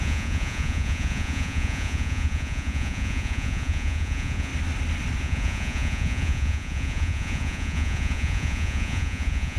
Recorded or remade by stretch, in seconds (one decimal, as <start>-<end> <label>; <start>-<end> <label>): 0.0-4.5 remade; 4.5-5.2 recorded; 5.2-9.6 remade